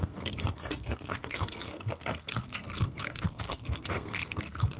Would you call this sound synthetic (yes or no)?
yes